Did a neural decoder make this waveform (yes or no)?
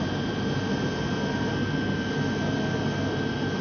no